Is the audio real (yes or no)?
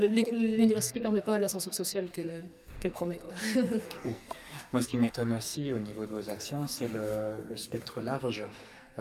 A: no